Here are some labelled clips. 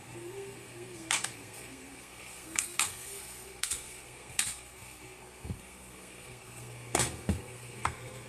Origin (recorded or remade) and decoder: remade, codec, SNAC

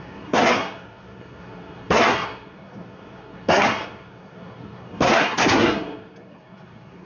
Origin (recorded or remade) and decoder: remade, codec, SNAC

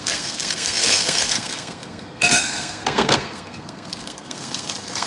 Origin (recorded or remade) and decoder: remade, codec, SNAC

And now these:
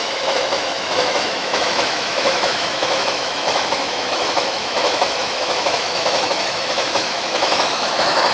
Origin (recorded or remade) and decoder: remade, autoencoder, DAC-VAE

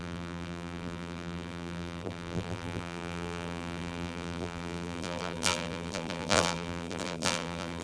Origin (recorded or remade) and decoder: remade, vocoder, BigVGAN v2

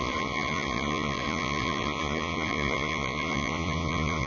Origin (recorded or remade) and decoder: remade, vocoder, Vocos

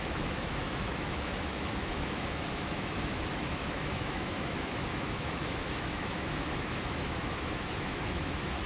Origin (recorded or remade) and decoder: remade, autoencoder, DAC-VAE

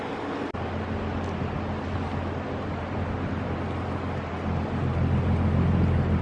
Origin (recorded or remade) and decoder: recorded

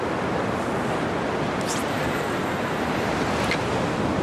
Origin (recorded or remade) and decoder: recorded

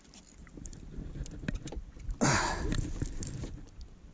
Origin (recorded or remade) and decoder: recorded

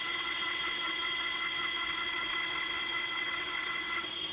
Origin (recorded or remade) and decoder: remade, vocoder, WaveNeXt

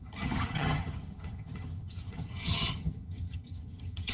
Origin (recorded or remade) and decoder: remade, vocoder, HiFi-GAN